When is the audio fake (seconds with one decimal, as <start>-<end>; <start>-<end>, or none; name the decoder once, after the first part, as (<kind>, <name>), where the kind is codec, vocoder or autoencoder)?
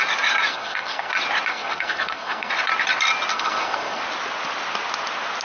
0.5-1.1 (codec, SNAC); 1.5-2.5; 3.3-4.0